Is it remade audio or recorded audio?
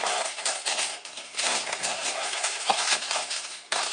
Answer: remade